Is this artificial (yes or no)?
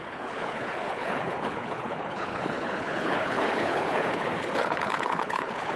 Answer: yes